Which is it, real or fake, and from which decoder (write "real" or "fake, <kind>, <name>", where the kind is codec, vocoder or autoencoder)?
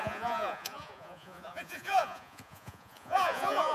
fake, vocoder, Vocos